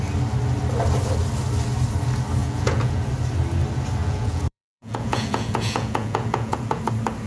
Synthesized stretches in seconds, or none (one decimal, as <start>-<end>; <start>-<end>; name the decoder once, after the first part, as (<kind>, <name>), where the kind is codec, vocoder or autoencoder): 2.4-3.1 (vocoder, Vocos); 4.0-6.8